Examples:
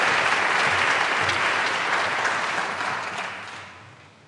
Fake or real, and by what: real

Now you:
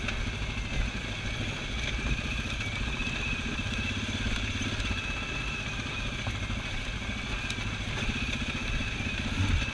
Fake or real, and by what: real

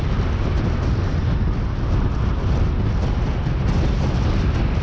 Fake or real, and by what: real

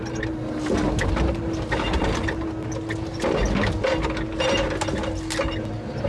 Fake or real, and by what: real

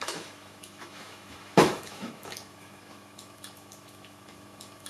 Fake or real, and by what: fake, autoencoder, DAC-VAE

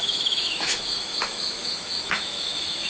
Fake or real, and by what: fake, autoencoder, DAC-VAE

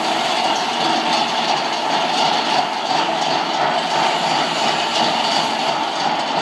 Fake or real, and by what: real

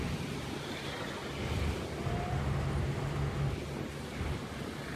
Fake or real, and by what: real